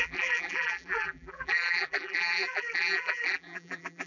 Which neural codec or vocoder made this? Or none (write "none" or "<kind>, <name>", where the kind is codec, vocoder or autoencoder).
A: vocoder, BigVGAN v2